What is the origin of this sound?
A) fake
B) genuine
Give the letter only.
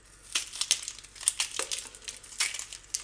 B